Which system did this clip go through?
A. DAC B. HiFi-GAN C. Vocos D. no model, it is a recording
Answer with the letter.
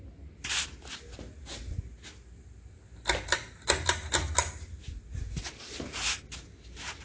D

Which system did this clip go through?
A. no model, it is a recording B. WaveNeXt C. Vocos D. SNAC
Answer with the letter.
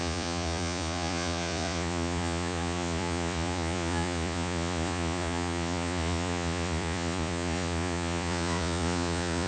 C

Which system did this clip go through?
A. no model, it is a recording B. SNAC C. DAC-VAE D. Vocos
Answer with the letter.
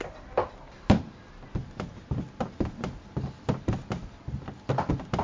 A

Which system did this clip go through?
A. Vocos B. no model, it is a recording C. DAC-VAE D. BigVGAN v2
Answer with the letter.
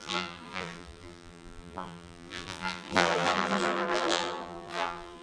D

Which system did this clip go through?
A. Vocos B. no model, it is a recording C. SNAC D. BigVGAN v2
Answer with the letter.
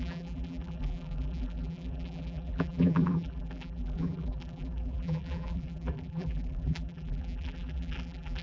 D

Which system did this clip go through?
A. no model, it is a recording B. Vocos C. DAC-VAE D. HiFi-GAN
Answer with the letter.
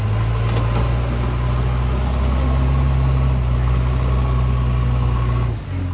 A